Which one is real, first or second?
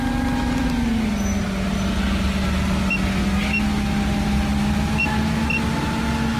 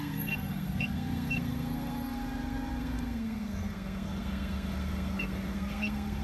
first